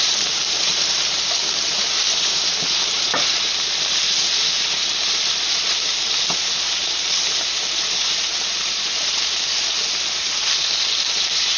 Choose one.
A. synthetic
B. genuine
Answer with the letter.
A